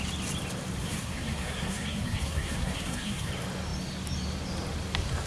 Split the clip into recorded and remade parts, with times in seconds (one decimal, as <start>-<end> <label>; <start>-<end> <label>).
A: 0.0-0.8 recorded; 0.8-3.3 remade; 3.3-5.3 recorded